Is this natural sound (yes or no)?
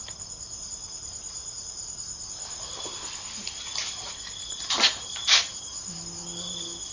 yes